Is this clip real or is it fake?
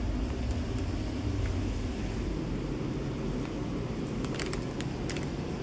real